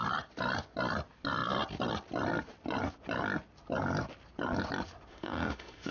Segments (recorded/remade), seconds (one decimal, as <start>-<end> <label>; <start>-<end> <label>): 0.0-5.1 recorded; 5.1-5.9 remade